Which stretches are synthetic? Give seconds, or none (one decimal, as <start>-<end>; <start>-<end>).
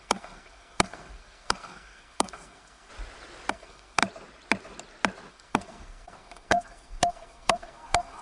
0.0-2.9; 3.5-4.0; 5.3-8.2